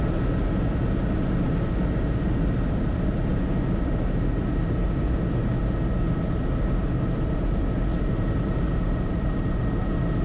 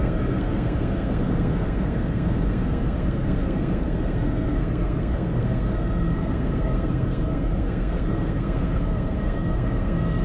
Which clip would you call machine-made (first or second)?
second